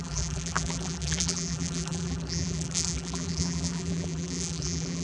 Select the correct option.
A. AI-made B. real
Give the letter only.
A